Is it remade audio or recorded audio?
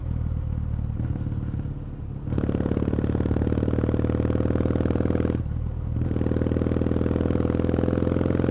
recorded